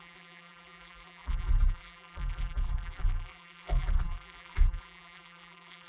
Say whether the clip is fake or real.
fake